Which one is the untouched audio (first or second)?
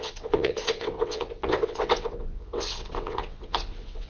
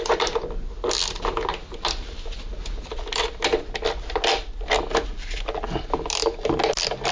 second